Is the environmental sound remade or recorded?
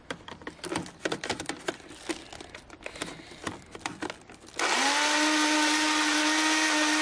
recorded